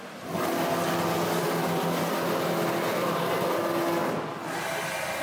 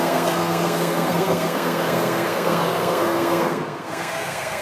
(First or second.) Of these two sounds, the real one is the first